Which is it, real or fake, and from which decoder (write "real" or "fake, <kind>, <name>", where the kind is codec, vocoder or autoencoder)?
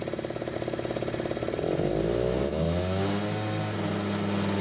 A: real